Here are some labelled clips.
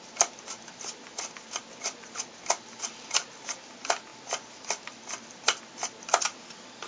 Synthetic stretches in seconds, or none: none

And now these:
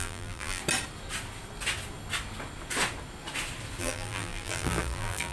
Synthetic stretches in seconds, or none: 0.0-0.6 (vocoder, BigVGAN v2); 3.8-5.3